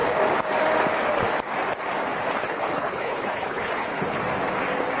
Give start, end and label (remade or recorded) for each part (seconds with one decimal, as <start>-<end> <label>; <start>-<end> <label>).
0.0-2.4 recorded; 2.4-4.2 remade; 4.2-5.0 recorded